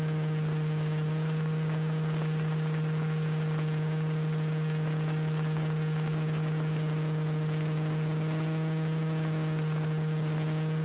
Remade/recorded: recorded